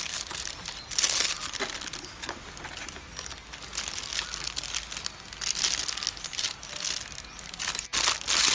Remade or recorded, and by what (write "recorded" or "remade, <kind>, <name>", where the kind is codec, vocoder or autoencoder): recorded